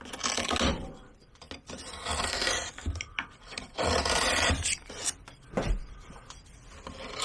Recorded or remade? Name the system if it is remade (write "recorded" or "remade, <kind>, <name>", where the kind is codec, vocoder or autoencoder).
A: recorded